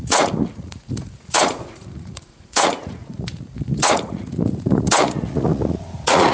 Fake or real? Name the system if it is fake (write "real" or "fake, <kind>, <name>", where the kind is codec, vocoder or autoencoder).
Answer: fake, vocoder, Vocos